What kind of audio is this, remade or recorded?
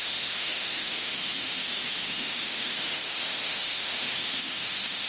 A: remade